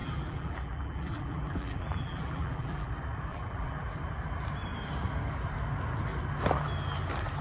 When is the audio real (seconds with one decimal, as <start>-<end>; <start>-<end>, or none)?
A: 2.9-3.3; 3.9-7.4